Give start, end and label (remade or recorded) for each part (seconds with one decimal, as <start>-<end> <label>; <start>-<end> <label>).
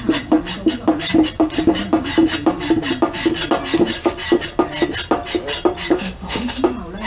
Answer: 0.0-5.9 recorded; 5.9-6.6 remade; 6.6-7.1 recorded